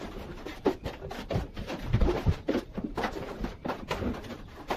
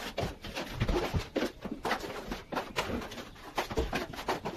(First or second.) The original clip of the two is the second